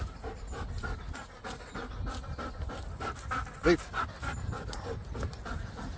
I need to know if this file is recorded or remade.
recorded